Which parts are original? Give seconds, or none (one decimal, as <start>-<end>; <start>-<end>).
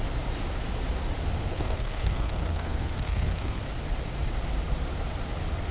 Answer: 0.0-1.5; 3.6-5.7